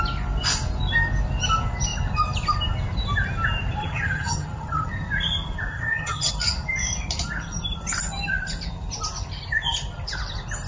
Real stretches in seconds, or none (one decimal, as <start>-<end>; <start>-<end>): 0.0-3.8; 4.9-5.7; 6.3-10.7